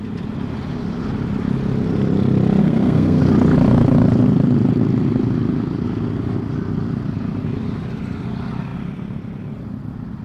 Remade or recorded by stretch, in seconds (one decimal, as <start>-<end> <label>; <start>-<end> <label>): 0.0-2.6 recorded; 2.6-3.2 remade; 3.2-10.2 recorded